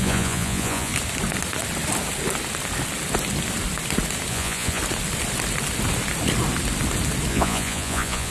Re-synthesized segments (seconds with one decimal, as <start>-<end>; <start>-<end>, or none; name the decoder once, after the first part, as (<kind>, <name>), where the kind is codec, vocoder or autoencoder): 0.0-0.9 (vocoder, Vocos); 4.3-4.8; 7.3-8.3